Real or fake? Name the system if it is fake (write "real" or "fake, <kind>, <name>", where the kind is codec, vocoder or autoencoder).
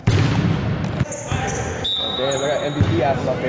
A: real